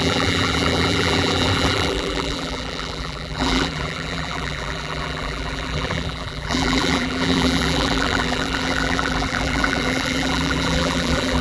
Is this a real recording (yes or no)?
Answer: no